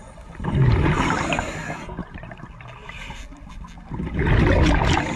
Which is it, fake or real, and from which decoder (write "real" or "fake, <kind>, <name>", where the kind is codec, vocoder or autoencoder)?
real